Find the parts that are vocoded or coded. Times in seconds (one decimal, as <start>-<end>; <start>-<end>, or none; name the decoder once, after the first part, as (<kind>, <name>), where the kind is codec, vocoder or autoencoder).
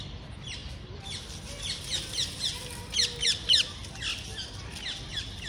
none